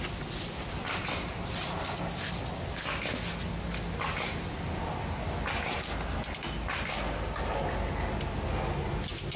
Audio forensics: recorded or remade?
recorded